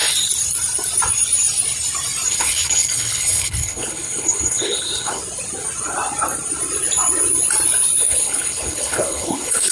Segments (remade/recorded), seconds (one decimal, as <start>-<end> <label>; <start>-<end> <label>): 0.0-2.3 recorded; 2.3-5.2 remade; 5.2-8.0 recorded; 8.0-9.7 remade